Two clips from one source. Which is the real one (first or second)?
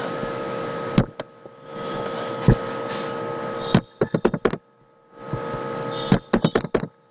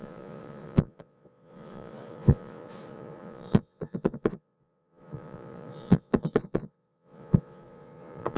first